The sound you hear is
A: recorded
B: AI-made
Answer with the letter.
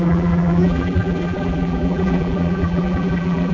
B